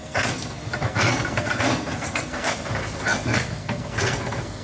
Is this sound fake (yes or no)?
yes